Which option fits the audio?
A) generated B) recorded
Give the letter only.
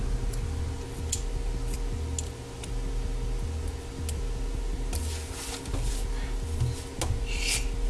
B